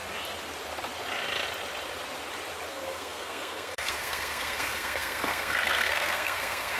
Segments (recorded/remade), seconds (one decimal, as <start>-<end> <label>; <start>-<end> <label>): 0.0-2.7 recorded; 2.7-6.8 remade